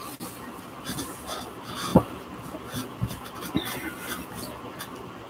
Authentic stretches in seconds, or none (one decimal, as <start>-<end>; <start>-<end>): 0.0-5.3